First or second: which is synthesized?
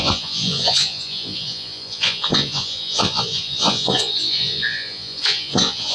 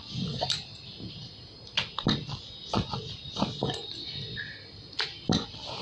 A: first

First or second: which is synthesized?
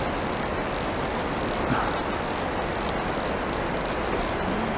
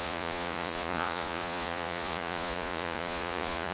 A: second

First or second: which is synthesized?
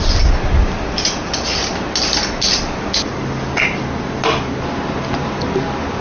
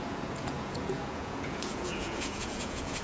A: second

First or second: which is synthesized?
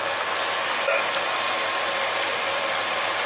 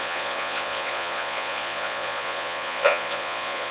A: second